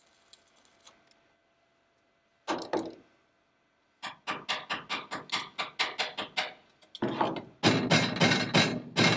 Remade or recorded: recorded